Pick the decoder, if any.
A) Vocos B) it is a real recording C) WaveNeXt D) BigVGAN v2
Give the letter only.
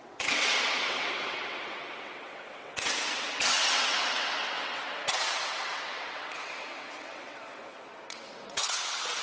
C